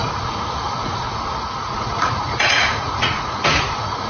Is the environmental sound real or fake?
fake